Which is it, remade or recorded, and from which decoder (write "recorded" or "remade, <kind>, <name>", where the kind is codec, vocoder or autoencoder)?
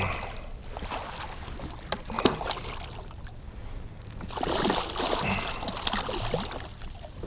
recorded